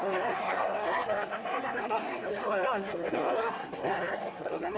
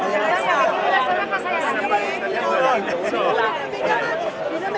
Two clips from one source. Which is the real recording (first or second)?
second